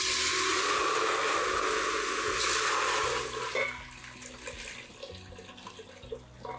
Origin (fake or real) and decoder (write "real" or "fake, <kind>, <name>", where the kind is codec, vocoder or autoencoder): real